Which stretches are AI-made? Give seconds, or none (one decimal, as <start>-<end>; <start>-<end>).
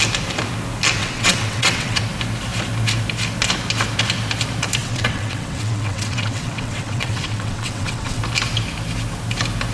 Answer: 1.0-2.0; 4.8-8.2